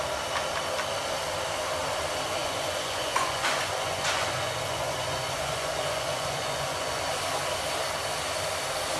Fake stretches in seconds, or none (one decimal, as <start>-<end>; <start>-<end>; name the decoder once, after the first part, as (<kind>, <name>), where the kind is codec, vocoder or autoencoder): 2.4-7.0 (vocoder, Vocos)